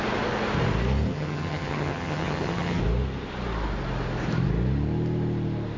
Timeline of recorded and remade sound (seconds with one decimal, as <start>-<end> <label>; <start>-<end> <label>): 0.0-1.1 recorded; 1.1-2.8 remade; 2.8-5.8 recorded